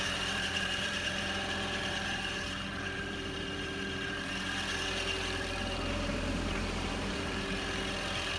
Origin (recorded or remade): remade